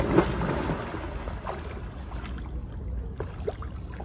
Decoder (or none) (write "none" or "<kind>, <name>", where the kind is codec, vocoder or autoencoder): none